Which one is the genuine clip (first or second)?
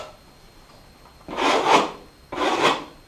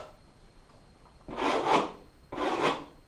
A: second